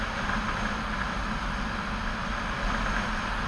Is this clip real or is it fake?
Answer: real